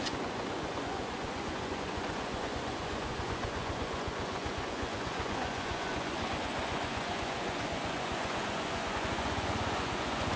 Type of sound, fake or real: fake